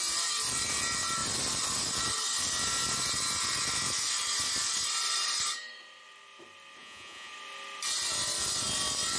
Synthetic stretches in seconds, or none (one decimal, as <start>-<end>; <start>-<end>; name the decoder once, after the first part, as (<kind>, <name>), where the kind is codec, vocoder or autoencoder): 6.8-7.3 (vocoder, Vocos)